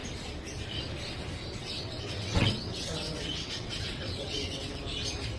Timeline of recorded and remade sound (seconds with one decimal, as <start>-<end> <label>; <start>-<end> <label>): 0.0-1.6 recorded; 1.6-4.8 remade; 4.8-5.4 recorded